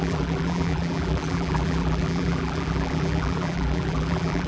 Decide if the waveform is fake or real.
fake